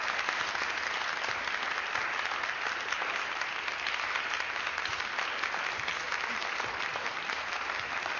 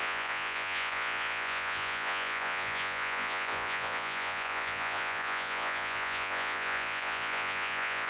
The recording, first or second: first